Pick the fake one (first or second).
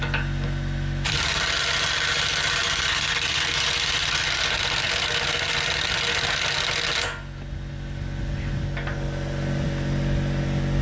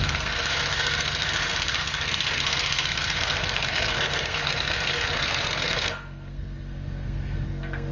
second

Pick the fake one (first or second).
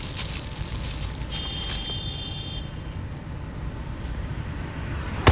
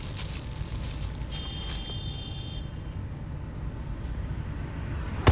first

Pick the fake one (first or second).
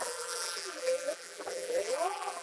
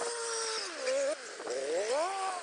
first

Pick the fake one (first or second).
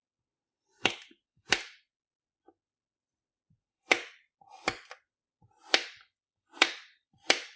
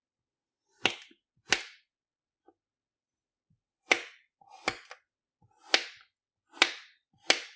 first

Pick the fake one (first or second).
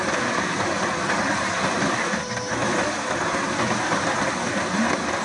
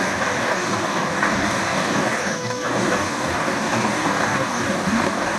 second